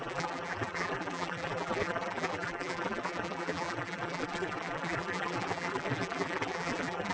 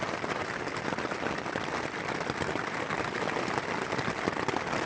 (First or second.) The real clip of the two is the second